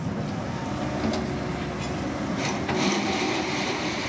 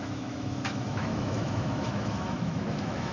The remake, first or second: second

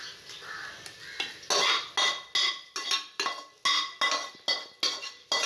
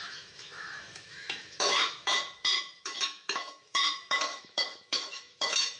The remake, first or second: second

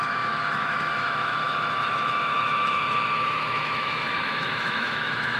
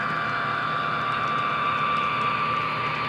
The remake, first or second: first